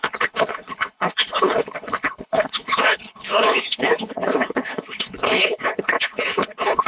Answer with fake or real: fake